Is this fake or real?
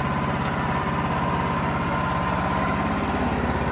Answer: real